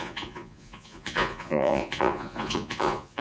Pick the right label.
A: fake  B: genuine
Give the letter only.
A